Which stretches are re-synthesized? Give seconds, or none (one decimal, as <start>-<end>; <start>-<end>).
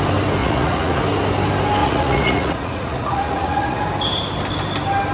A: 0.4-1.0; 1.8-3.8